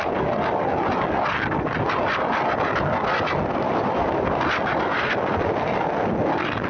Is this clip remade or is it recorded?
recorded